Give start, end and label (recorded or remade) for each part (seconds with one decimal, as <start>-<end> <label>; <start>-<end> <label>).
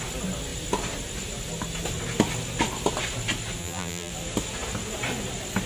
0.0-3.6 recorded; 3.6-4.1 remade; 4.1-5.7 recorded